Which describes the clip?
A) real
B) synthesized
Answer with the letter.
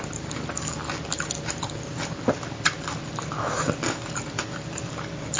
A